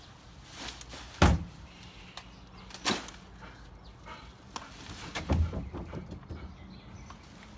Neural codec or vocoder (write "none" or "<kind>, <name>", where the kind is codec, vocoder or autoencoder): none